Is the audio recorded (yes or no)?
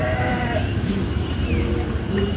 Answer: no